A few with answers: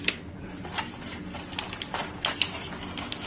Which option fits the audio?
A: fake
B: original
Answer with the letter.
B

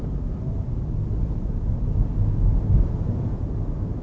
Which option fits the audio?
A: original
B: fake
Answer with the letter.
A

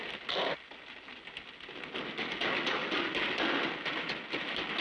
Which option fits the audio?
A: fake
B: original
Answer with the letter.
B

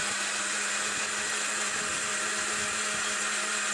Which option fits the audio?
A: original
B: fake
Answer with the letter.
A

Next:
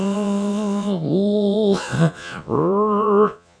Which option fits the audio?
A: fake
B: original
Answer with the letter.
A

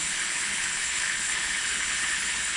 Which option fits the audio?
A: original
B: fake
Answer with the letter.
B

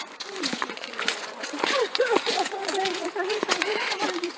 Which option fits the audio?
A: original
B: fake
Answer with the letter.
B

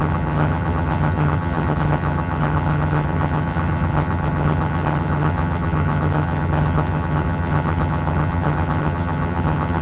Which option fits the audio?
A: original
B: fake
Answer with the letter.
B